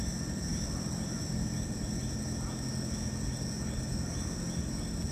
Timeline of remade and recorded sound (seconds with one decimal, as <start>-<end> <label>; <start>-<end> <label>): 0.0-2.0 remade; 2.0-5.1 recorded